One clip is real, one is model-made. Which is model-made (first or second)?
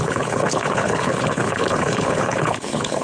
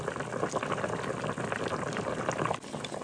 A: first